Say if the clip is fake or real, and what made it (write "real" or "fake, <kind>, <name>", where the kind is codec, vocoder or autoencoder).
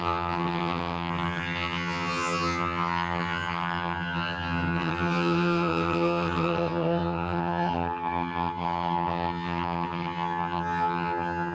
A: fake, vocoder, HiFi-GAN